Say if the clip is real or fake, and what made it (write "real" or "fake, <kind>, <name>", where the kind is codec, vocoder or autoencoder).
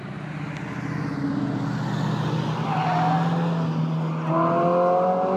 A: real